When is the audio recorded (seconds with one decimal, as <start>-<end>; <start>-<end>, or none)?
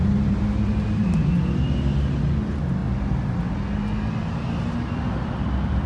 0.0-5.9